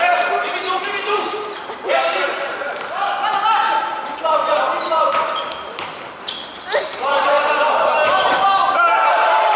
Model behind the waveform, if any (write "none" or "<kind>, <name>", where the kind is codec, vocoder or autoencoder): vocoder, BigVGAN v2